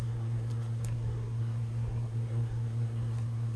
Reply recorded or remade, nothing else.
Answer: remade